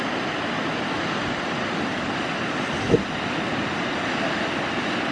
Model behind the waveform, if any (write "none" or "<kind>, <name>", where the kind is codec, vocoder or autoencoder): none